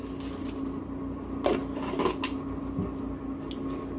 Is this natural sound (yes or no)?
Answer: yes